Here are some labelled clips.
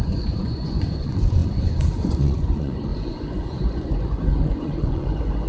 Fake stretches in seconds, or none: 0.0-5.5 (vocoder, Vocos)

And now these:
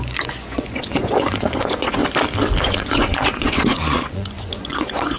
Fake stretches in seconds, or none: 0.0-2.0 (vocoder, Vocos); 2.6-5.2

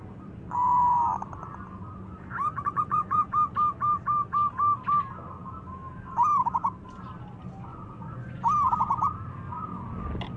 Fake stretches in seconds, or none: 2.6-3.2 (vocoder, Vocos); 7.7-8.4

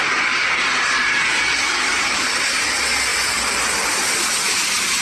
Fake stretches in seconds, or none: none